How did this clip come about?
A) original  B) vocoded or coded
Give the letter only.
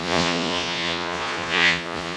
B